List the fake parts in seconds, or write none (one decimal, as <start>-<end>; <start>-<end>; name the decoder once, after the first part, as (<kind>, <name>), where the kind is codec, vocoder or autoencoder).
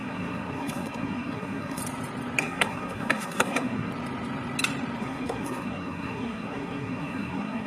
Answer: 0.0-1.8 (codec, SNAC); 2.4-3.9; 5.0-7.7